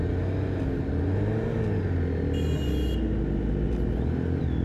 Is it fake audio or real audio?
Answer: real